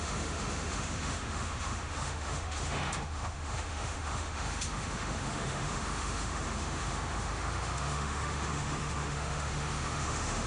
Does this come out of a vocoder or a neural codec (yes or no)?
yes